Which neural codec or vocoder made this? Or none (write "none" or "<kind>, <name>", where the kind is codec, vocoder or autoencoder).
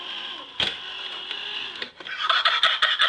none